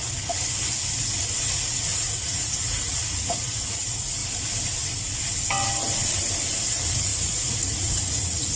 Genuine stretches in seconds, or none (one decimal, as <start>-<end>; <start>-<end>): 0.0-1.4; 4.2-6.6